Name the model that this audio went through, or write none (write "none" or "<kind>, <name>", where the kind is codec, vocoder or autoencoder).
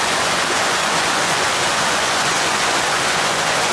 vocoder, Vocos